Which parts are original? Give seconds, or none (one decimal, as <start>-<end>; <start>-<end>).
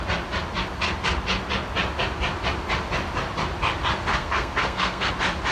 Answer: 0.0-4.1; 5.1-5.5